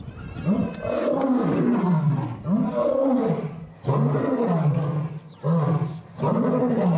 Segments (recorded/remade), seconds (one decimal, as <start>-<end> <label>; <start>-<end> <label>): 0.0-7.0 recorded